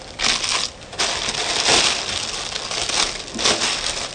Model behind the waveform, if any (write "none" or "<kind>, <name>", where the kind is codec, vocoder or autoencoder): none